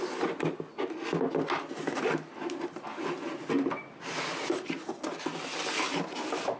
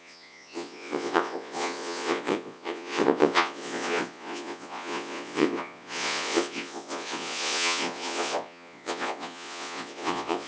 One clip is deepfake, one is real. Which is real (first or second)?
first